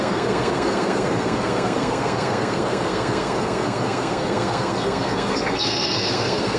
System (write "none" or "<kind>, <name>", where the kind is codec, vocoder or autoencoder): codec, SNAC